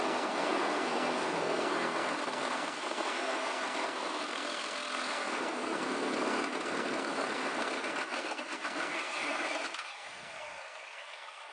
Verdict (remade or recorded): remade